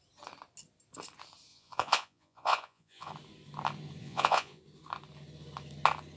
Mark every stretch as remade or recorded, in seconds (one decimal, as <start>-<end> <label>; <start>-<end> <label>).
0.0-1.5 recorded; 1.5-3.1 remade; 3.1-4.0 recorded; 4.0-4.6 remade; 4.6-6.2 recorded